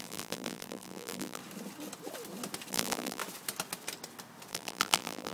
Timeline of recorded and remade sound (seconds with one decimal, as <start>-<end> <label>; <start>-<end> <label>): 0.0-1.4 remade; 1.4-2.7 recorded; 2.7-3.2 remade; 3.2-4.5 recorded; 4.5-5.3 remade